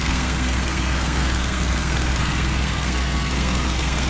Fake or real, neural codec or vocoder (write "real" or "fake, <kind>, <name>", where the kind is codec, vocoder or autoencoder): fake, codec, SNAC